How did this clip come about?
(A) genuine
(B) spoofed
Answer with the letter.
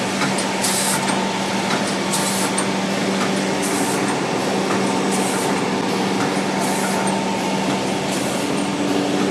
A